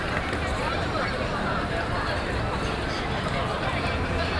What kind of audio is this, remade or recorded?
remade